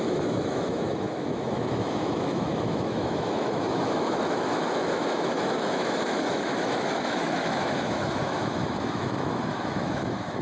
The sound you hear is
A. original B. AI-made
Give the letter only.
B